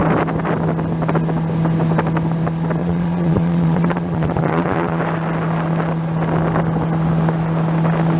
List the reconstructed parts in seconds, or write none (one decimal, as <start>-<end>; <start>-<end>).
2.8-5.0